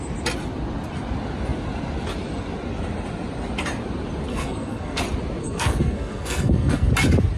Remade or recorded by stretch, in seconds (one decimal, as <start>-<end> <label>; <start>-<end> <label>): 0.0-4.3 recorded; 4.3-5.0 remade; 5.0-5.4 recorded; 5.4-6.9 remade; 6.9-7.4 recorded